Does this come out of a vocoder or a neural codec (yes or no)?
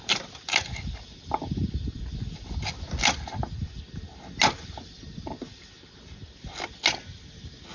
no